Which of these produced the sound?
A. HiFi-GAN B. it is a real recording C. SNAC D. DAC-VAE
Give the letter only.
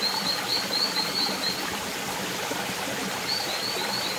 B